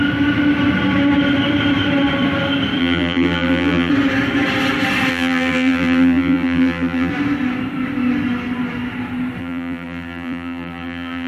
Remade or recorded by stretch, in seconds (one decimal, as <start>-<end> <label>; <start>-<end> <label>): 0.0-2.8 recorded; 2.8-3.9 remade; 3.9-5.1 recorded; 5.1-7.1 remade; 7.1-9.4 recorded; 9.4-11.3 remade